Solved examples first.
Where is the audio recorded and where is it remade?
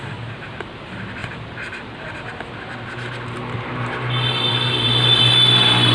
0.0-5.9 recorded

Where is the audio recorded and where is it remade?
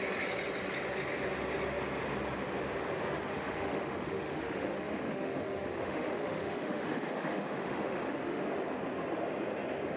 0.0-3.3 recorded; 3.3-8.4 remade; 8.4-10.0 recorded